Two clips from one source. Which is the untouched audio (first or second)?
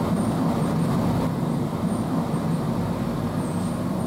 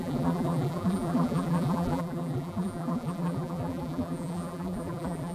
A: first